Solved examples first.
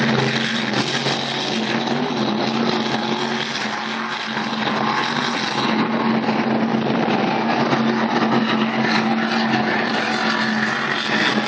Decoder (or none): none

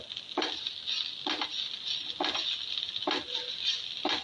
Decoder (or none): none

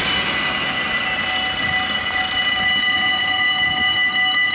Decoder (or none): none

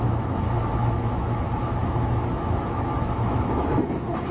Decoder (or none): autoencoder, DAC-VAE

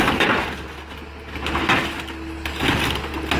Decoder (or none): none